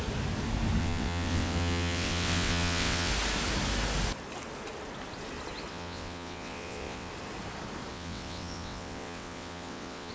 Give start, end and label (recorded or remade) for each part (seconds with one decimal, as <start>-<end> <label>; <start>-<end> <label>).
0.0-0.8 recorded; 0.8-3.1 remade; 3.1-5.7 recorded; 5.7-7.1 remade; 7.1-7.9 recorded; 7.9-10.1 remade